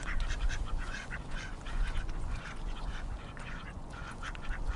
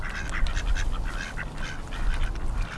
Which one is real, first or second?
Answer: second